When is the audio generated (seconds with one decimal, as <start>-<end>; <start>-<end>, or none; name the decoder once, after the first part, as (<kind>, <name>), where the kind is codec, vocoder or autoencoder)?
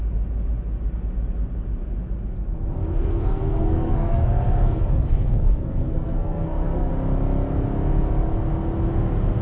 2.9-6.9 (codec, SNAC)